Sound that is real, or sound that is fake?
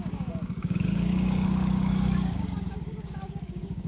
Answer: fake